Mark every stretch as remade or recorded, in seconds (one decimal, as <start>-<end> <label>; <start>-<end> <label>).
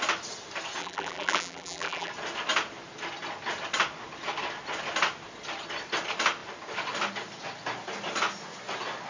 0.0-0.8 recorded; 0.8-2.1 remade; 2.1-9.1 recorded